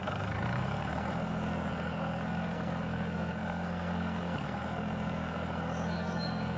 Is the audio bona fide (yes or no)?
no